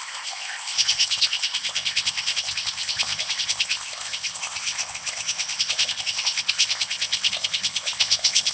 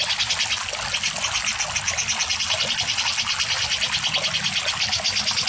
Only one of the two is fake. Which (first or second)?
first